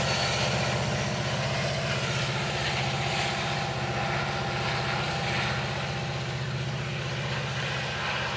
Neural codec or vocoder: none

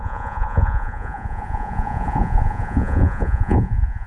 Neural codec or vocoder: vocoder, Vocos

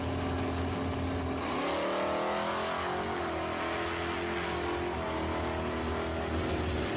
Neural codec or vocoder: none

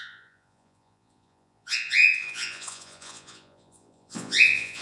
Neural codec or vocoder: vocoder, Vocos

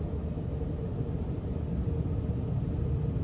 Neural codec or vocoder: none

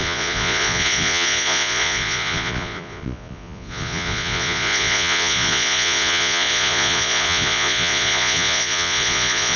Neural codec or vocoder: vocoder, Vocos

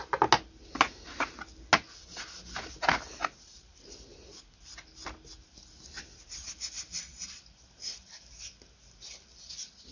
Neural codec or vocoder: none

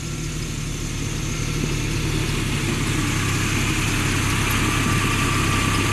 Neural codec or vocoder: none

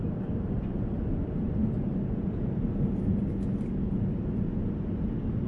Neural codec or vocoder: none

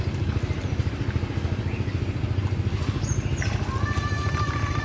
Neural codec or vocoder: none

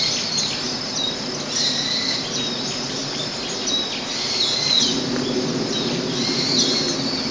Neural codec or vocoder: none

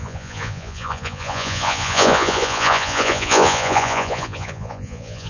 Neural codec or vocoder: vocoder, Vocos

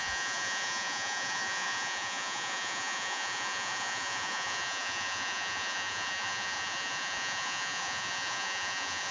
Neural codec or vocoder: vocoder, Vocos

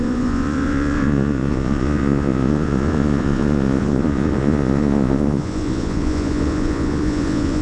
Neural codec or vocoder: vocoder, Vocos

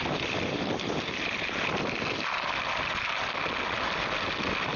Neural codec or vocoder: none